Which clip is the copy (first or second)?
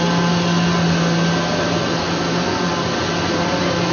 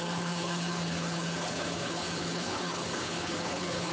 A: second